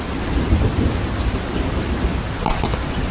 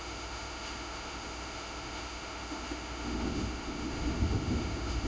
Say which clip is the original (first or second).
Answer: first